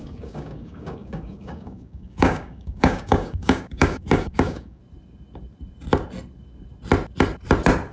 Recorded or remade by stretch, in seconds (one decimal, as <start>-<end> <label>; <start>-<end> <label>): 0.0-4.8 remade; 4.8-7.9 recorded